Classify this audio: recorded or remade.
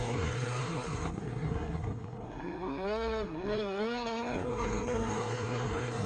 remade